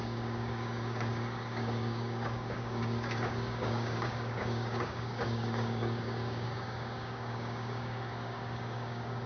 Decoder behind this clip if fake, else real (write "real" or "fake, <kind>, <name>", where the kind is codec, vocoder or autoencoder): fake, codec, DAC